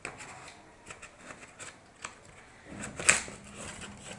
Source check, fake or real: real